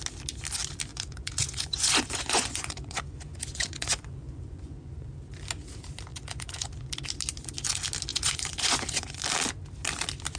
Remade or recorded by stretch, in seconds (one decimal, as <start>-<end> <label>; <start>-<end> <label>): 0.0-0.9 recorded; 0.9-5.1 remade; 5.1-6.1 recorded; 6.1-6.9 remade; 6.9-8.1 recorded; 8.1-9.2 remade; 9.2-10.4 recorded